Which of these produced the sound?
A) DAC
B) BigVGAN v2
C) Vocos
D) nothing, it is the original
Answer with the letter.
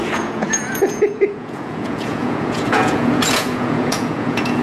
C